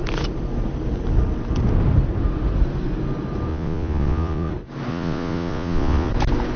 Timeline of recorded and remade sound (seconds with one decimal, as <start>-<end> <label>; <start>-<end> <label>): 0.0-3.5 recorded; 3.5-4.5 remade; 4.5-4.9 recorded; 4.9-6.1 remade; 6.1-6.6 recorded